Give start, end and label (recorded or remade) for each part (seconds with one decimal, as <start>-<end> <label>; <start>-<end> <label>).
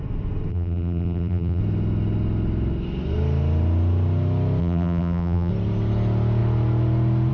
0.0-0.5 recorded; 0.5-1.6 remade; 1.6-4.6 recorded; 4.6-5.5 remade; 5.5-7.3 recorded